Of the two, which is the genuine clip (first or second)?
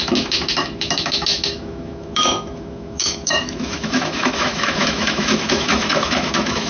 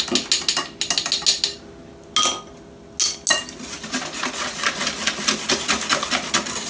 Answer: second